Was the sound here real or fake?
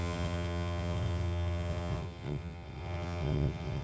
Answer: fake